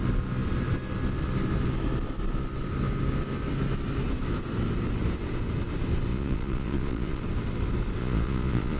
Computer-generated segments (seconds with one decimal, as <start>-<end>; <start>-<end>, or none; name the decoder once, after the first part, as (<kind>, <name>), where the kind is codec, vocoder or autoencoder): 6.1-7.2 (vocoder, Vocos); 8.0-8.8